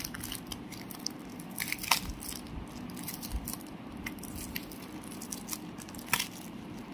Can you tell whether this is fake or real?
real